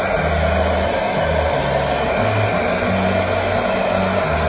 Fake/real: real